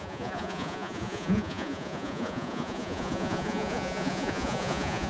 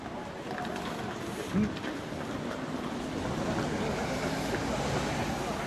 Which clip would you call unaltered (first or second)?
second